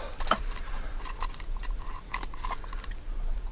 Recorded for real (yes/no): yes